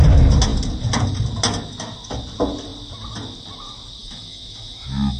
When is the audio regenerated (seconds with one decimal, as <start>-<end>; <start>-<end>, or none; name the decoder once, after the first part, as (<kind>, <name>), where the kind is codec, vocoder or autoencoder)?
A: 4.0-5.2 (autoencoder, DAC-VAE)